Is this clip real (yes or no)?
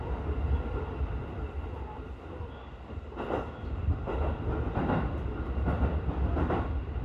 no